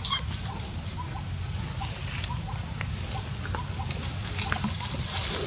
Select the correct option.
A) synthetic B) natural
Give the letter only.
B